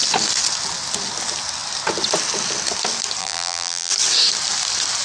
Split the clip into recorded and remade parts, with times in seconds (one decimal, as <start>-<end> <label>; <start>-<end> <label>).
0.0-3.2 recorded; 3.2-3.9 remade; 3.9-5.0 recorded